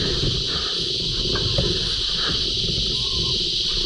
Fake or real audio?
real